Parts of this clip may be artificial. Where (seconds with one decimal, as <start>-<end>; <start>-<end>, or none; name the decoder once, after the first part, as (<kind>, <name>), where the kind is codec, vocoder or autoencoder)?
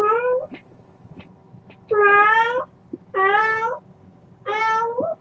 3.4-4.6 (codec, DAC)